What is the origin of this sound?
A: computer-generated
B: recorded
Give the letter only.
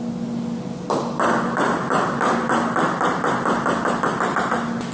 B